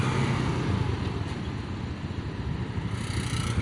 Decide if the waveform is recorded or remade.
recorded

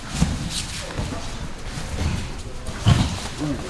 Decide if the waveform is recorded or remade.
recorded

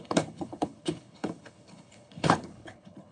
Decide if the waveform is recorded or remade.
remade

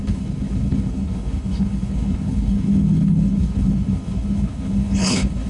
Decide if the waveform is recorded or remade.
remade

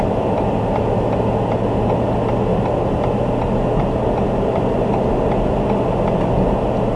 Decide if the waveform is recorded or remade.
recorded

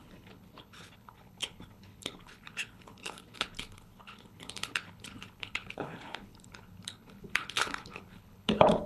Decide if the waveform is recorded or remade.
remade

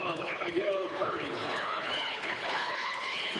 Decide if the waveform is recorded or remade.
remade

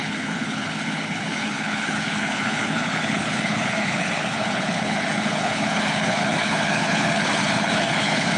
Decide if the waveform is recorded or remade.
remade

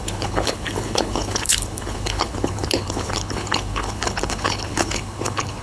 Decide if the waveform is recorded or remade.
remade